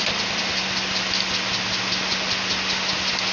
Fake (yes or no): no